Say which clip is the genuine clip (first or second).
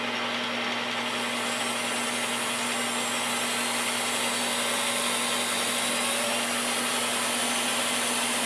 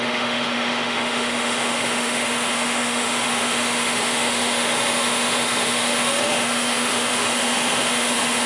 first